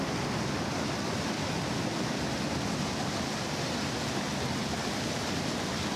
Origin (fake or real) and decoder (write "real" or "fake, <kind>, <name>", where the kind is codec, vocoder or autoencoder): real